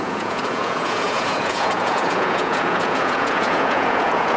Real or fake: fake